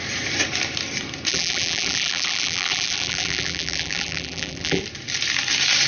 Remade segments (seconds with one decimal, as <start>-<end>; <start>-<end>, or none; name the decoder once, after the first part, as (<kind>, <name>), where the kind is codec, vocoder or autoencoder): 1.3-4.8 (vocoder, BigVGAN v2)